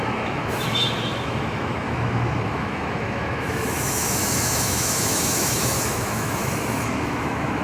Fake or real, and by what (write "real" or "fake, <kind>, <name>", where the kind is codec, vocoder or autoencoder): fake, autoencoder, DAC-VAE